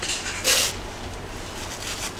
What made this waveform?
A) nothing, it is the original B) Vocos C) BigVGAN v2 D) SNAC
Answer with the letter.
A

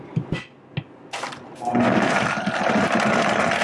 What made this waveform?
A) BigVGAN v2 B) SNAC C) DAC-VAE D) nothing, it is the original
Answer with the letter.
D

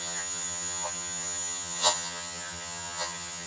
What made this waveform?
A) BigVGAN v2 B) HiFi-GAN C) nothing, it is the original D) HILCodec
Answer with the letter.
B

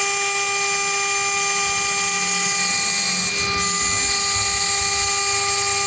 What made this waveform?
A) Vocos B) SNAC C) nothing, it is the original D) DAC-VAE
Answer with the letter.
C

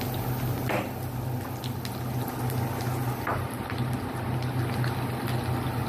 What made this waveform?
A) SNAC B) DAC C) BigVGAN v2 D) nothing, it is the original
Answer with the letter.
D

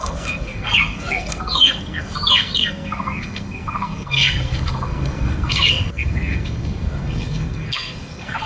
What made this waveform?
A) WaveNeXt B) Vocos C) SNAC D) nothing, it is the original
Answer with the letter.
C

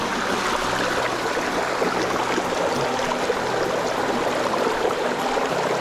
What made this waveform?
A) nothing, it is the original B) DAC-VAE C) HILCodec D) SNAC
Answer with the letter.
A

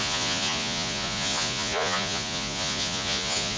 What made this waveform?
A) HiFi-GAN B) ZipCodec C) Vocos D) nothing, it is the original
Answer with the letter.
C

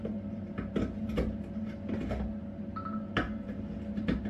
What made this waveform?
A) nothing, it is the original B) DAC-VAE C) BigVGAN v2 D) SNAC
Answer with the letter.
A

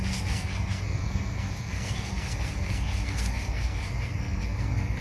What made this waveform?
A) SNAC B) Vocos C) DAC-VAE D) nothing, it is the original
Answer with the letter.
A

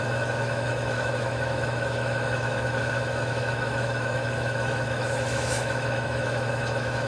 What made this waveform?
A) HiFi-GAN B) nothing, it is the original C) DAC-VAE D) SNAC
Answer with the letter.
C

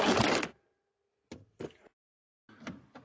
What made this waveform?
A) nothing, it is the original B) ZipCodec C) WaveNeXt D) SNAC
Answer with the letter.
A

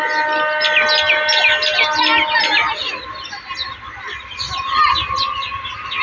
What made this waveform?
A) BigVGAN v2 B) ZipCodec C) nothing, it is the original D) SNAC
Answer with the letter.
C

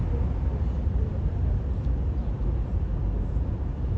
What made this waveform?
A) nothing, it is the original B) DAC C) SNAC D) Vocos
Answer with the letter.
A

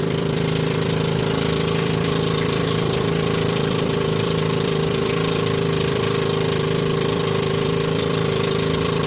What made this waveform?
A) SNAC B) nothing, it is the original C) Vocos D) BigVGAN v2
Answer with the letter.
D